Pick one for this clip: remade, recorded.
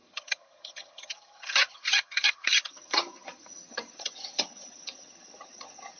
remade